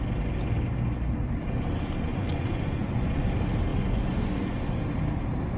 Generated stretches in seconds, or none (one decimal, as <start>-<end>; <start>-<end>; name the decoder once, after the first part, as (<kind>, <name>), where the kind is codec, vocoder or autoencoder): 2.1-3.3 (vocoder, Vocos); 3.7-4.6